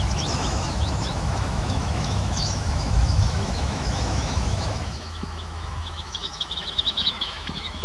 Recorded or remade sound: remade